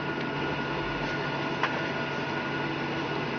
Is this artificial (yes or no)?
no